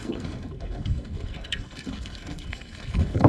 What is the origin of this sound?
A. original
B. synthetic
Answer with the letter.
B